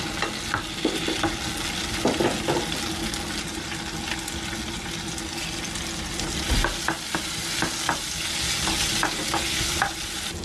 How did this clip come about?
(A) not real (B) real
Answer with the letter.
B